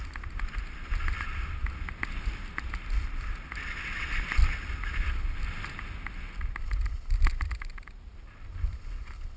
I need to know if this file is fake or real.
real